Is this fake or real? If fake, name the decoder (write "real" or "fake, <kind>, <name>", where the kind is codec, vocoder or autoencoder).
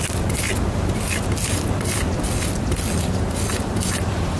real